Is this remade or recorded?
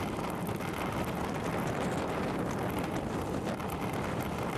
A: recorded